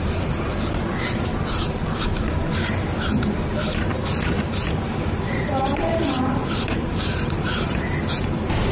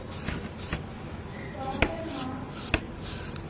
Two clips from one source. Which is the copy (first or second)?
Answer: first